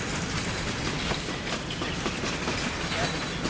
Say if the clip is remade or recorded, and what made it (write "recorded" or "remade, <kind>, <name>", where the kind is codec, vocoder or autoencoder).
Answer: recorded